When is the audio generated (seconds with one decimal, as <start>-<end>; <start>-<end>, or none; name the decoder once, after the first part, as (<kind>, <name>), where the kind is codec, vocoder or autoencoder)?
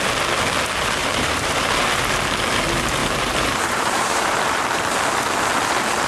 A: 1.0-1.7 (vocoder, BigVGAN v2); 3.0-4.9